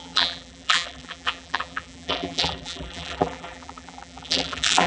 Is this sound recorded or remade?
remade